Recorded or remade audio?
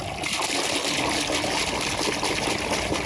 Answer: recorded